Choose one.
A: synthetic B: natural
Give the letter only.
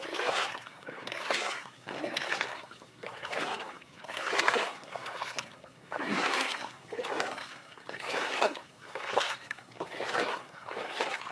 A